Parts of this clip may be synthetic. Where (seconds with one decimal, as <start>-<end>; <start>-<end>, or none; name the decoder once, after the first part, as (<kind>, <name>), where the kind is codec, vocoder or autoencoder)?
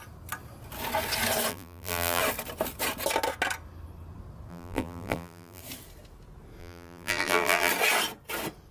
1.5-2.2 (vocoder, BigVGAN v2); 4.5-5.6; 6.6-7.7